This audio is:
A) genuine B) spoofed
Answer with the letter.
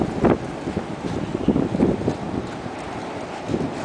A